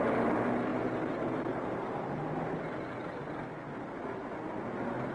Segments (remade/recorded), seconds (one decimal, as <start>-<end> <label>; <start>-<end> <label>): 0.0-5.1 recorded